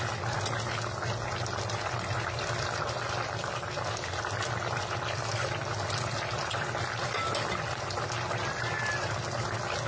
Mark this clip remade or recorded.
recorded